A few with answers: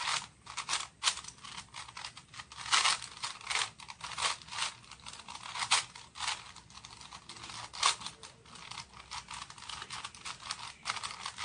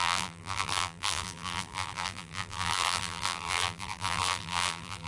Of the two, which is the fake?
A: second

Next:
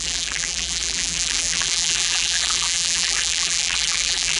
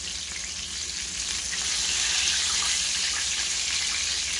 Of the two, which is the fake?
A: first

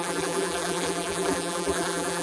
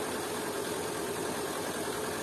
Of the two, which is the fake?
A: first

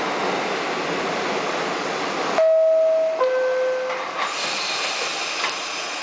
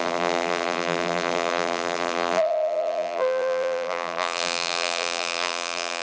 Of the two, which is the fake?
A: second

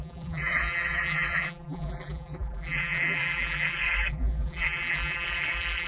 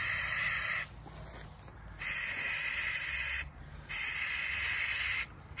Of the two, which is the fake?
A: first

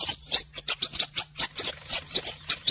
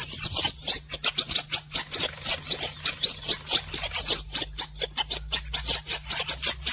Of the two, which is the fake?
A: first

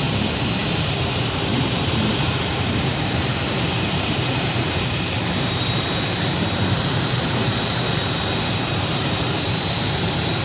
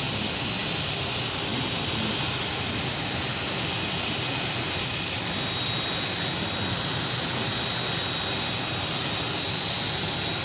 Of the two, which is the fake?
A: first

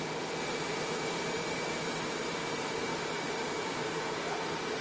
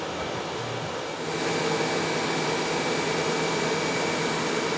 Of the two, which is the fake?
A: first